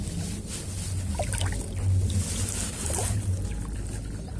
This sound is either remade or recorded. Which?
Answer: recorded